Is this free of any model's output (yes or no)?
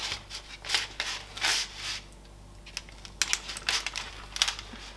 yes